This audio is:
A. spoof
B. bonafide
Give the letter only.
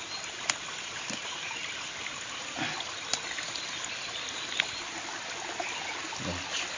B